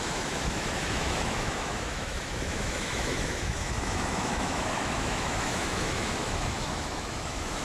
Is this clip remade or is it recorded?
remade